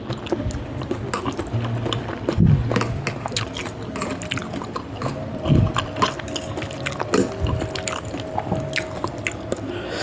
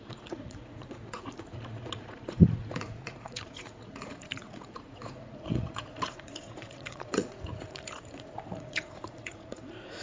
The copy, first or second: second